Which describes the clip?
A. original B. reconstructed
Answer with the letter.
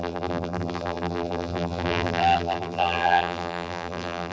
B